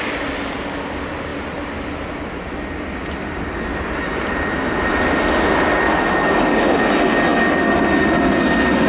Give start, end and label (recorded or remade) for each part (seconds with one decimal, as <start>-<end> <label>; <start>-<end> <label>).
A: 0.0-8.9 recorded